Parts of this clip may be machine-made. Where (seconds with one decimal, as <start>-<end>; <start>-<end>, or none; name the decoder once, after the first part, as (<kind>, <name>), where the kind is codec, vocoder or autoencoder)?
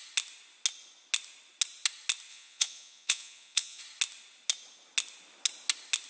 2.3-3.8 (vocoder, Vocos)